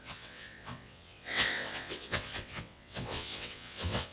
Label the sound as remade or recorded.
remade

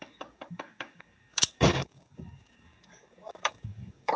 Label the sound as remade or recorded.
remade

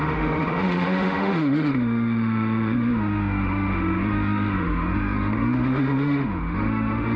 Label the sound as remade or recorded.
remade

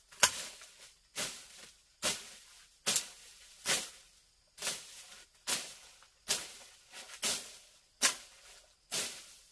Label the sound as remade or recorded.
recorded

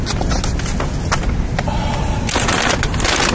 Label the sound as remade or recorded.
recorded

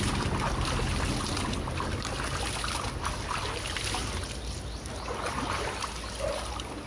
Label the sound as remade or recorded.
recorded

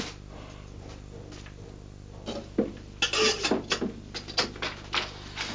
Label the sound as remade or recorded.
recorded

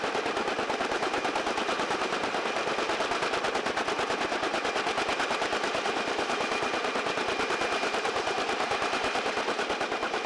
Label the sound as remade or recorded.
recorded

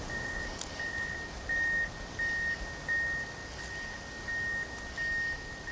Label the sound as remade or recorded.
recorded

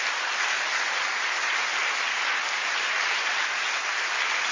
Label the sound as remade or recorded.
recorded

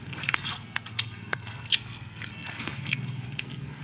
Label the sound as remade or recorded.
remade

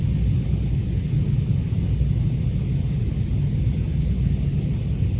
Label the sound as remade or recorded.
recorded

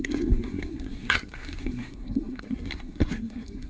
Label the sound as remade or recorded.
remade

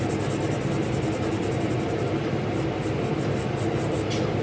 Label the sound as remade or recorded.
recorded